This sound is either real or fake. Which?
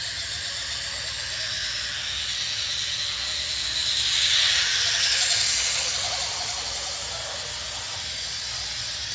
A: real